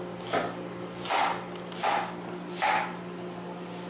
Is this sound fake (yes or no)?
no